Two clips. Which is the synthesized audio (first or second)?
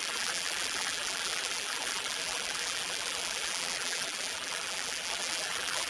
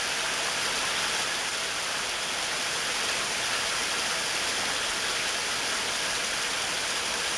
first